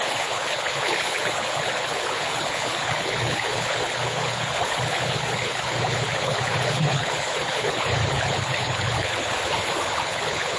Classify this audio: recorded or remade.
remade